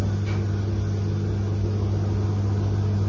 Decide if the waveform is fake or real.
real